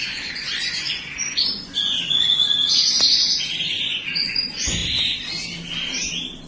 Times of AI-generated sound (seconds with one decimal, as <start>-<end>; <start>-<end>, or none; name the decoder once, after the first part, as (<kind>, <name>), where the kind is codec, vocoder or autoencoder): 0.0-2.4 (vocoder, Vocos); 3.6-4.8